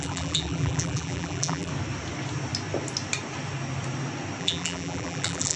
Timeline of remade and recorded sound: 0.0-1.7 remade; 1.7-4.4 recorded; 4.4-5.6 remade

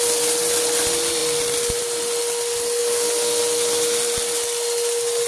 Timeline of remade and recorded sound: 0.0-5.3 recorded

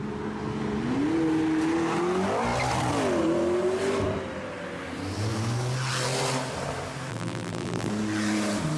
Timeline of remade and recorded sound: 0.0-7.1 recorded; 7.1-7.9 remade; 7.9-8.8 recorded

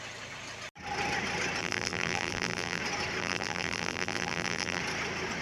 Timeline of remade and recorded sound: 0.0-1.6 recorded; 1.6-2.8 remade; 2.8-3.2 recorded; 3.2-4.8 remade; 4.8-5.4 recorded

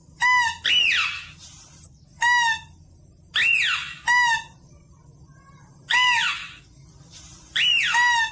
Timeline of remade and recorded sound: 0.0-8.3 recorded